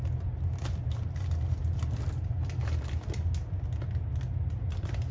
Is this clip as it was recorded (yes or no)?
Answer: yes